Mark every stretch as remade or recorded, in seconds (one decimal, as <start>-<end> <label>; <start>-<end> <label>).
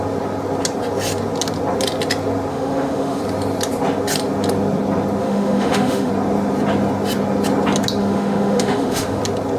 0.0-2.5 recorded; 2.5-3.2 remade; 3.2-5.2 recorded; 5.2-6.1 remade; 6.1-8.0 recorded; 8.0-9.2 remade; 9.2-9.6 recorded